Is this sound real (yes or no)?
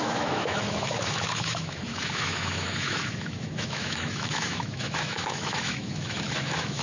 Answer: no